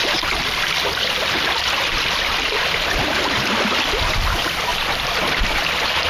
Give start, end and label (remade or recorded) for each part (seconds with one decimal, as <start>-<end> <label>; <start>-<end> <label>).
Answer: 0.0-3.7 remade; 3.7-4.7 recorded; 4.7-5.5 remade; 5.5-6.1 recorded